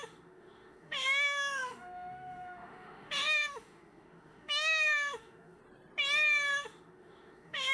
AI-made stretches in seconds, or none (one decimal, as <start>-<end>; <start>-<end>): 0.0-5.6; 6.6-7.7